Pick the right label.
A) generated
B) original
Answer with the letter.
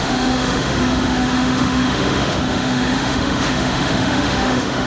A